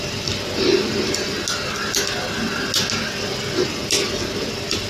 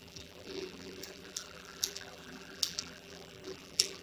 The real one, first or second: first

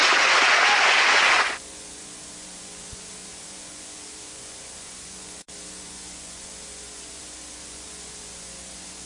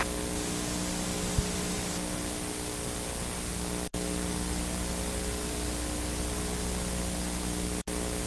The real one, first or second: second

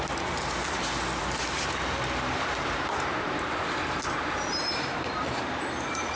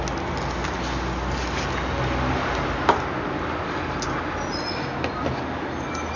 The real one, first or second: second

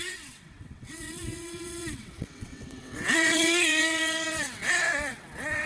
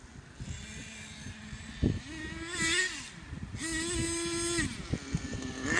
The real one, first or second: second